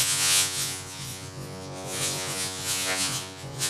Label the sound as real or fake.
fake